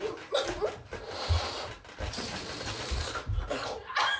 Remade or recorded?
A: recorded